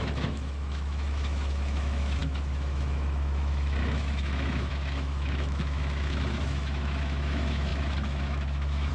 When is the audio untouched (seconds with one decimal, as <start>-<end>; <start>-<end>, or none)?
none